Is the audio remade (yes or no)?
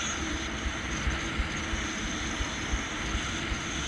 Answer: no